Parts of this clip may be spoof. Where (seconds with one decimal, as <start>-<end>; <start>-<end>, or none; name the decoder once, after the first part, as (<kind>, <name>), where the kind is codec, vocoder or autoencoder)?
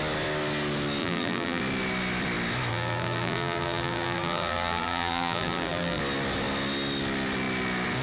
1.0-1.6 (vocoder, BigVGAN v2); 2.7-6.0